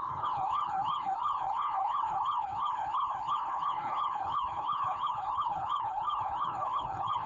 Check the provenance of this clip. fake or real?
fake